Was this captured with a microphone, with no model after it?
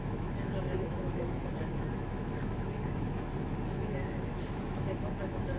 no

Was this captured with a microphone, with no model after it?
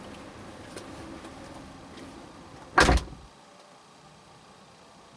yes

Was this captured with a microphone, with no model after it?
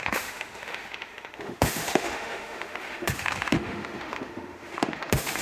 no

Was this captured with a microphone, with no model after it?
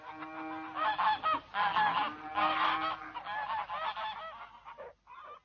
yes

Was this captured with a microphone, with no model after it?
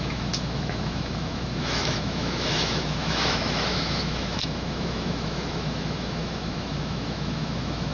no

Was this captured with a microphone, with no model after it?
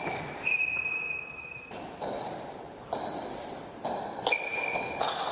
yes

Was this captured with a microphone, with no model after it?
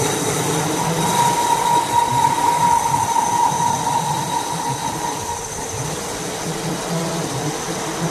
yes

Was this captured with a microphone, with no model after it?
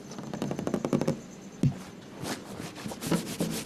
yes